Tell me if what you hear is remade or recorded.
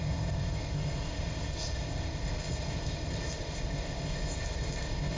remade